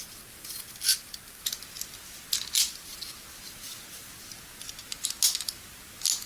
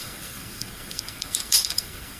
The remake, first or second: second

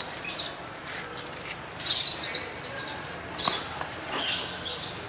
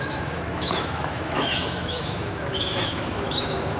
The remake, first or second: second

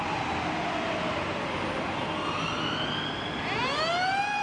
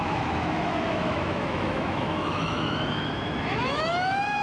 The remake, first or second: second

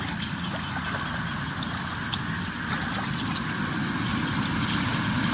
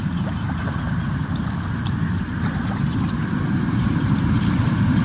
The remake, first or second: second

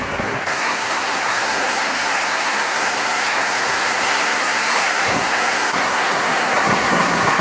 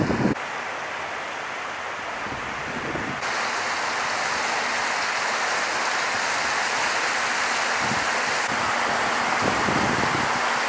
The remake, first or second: first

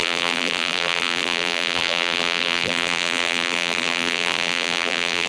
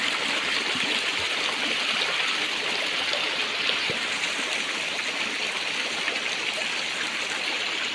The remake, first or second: first